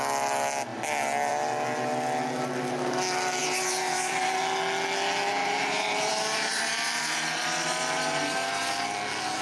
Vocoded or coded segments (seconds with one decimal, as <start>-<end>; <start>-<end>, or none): 3.4-4.4; 5.4-6.1; 6.5-7.0